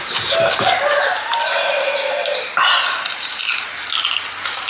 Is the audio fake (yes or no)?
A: no